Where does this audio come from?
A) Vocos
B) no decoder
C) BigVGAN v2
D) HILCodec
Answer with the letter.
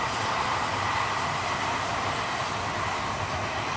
B